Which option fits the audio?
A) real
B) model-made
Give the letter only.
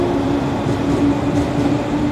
A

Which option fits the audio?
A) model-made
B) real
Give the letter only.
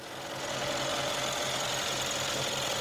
B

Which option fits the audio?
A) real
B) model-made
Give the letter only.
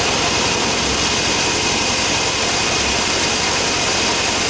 A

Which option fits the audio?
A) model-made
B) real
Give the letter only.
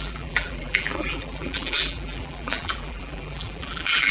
A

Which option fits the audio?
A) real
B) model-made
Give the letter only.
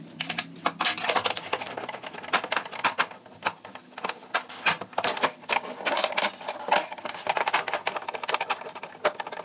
A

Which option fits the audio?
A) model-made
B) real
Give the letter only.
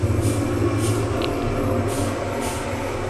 B